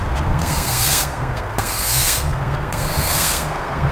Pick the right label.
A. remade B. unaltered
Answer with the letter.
A